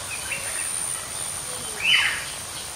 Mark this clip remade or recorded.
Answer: recorded